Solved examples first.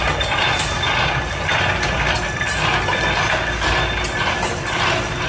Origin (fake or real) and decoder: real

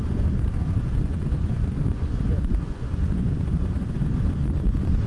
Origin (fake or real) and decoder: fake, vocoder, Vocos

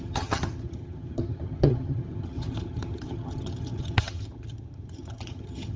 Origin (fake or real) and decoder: fake, vocoder, HiFi-GAN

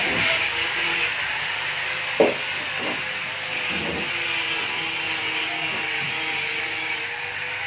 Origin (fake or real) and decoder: real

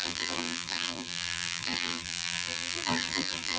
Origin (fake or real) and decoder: fake, vocoder, BigVGAN v2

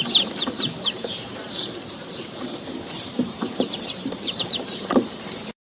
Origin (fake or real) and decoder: fake, vocoder, BigVGAN v2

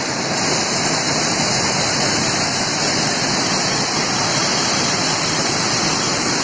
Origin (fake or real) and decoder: real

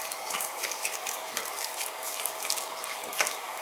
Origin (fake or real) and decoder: fake, codec, DAC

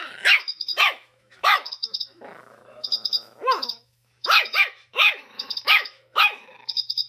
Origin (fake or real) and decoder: fake, autoencoder, DAC-VAE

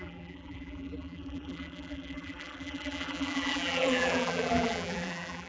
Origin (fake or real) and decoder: fake, vocoder, BigVGAN v2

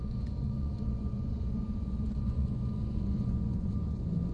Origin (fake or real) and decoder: fake, vocoder, Vocos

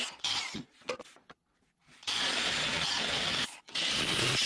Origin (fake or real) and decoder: fake, vocoder, Vocos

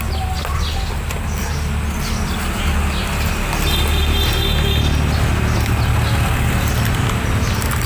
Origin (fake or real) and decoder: real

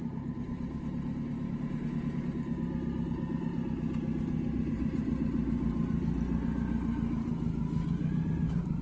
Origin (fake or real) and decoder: real